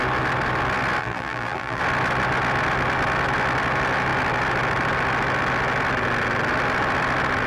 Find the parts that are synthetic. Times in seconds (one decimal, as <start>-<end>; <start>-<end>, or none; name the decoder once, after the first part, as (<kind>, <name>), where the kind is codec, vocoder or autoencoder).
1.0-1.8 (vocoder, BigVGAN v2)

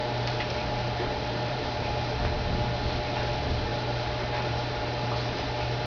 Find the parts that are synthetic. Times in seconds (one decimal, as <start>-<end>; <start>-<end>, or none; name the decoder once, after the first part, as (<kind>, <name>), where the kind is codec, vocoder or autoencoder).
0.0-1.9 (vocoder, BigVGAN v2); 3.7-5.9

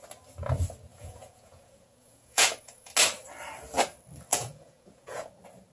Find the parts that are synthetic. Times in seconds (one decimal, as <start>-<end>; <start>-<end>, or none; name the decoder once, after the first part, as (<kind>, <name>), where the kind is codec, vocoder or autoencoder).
0.9-2.9 (vocoder, Vocos); 4.3-5.3

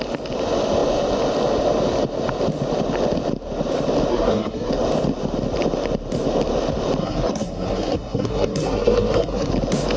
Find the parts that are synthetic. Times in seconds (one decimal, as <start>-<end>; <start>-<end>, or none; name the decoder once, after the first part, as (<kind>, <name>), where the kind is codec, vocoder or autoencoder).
4.1-4.7 (codec, SNAC); 7.0-9.5

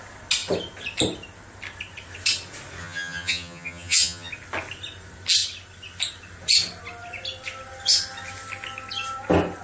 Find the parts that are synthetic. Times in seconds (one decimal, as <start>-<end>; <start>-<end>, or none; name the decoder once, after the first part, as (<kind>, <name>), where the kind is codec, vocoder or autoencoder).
2.8-4.3 (vocoder, HiFi-GAN)

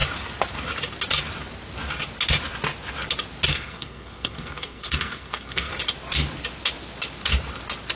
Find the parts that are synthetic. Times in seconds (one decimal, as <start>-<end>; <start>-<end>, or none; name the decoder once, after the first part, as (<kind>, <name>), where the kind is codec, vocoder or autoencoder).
3.5-5.7 (codec, SNAC)